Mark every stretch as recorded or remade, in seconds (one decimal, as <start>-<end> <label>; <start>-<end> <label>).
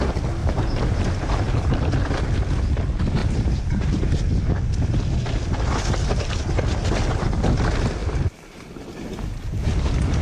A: 0.0-0.4 recorded; 0.4-1.4 remade; 1.4-3.2 recorded; 3.2-4.2 remade; 4.2-8.0 recorded; 8.0-8.7 remade; 8.7-10.2 recorded